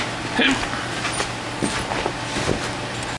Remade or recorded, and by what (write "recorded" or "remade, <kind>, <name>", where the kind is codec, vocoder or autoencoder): recorded